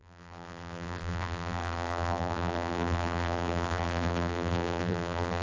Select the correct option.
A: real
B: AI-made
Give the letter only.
B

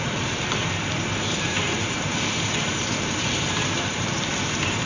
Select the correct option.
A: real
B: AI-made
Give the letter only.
B